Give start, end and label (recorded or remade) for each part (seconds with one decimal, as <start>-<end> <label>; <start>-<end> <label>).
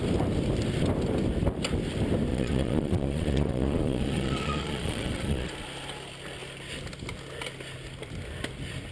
0.0-2.3 recorded; 2.3-5.5 remade; 5.5-8.9 recorded